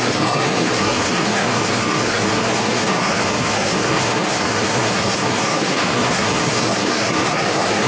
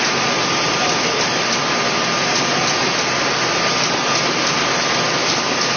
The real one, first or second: second